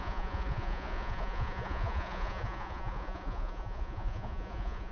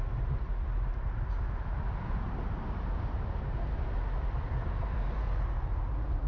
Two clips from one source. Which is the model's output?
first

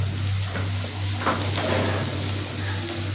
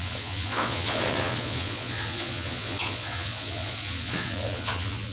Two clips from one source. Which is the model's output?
second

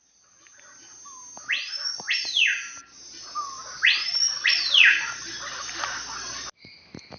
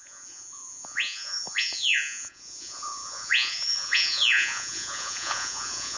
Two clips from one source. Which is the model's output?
second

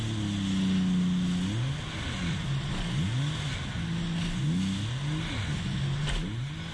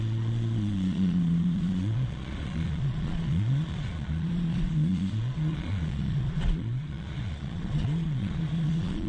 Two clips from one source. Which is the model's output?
second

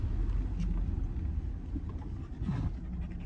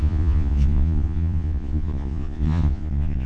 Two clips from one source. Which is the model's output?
second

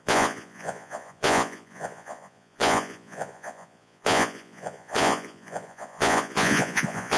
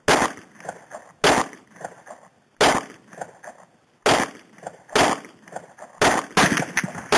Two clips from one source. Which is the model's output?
first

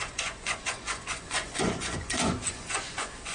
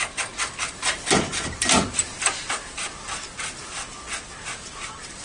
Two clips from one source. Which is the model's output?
first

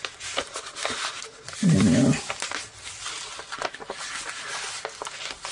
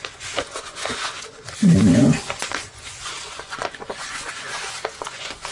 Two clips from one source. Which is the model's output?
second